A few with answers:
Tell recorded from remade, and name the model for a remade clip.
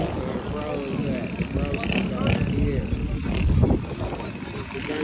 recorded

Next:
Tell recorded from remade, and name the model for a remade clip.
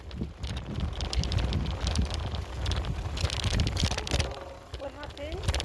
recorded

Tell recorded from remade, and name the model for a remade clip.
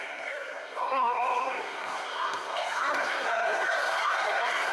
remade, codec, SNAC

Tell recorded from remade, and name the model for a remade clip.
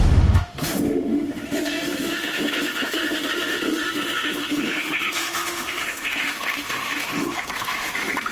remade, autoencoder, DAC-VAE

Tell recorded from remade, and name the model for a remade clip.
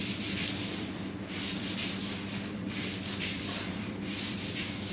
remade, vocoder, BigVGAN v2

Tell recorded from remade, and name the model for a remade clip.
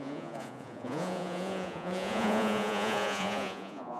remade, vocoder, Vocos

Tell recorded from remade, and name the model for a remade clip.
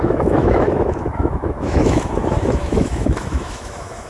remade, autoencoder, DAC-VAE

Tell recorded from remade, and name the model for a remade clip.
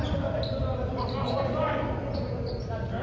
recorded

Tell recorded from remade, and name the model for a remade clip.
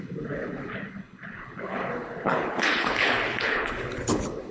remade, codec, HILCodec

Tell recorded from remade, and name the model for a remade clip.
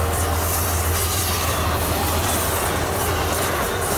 remade, vocoder, BigVGAN v2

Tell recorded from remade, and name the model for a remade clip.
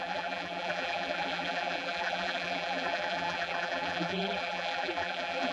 remade, vocoder, BigVGAN v2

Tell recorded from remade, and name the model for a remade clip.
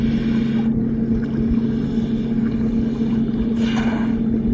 recorded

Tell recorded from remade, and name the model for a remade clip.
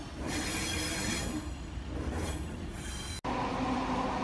recorded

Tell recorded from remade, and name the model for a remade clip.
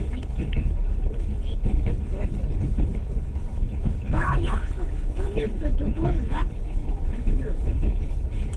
remade, codec, HILCodec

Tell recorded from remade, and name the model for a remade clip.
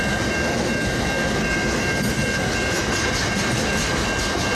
recorded